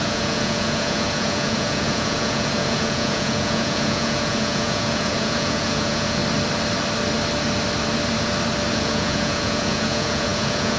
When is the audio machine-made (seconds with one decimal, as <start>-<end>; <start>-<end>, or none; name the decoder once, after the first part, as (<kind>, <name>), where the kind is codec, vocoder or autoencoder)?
0.0-6.2 (vocoder, Vocos); 8.7-10.8